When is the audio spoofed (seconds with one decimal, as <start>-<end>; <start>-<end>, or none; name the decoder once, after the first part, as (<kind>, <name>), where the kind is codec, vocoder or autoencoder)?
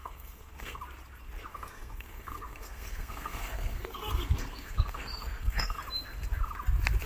0.0-0.8 (codec, SNAC); 1.5-5.8